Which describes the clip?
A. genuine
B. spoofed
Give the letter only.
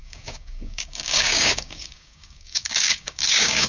B